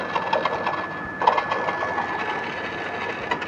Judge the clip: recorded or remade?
recorded